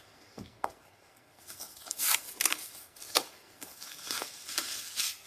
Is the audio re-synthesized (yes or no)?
yes